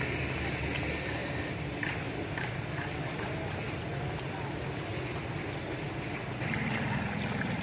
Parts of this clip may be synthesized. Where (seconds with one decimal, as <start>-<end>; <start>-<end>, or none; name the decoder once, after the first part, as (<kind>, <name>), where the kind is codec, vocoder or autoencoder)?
none